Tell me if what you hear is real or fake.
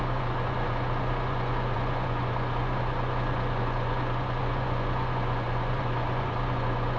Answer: fake